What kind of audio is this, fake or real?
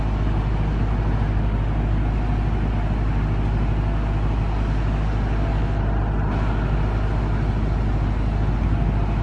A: real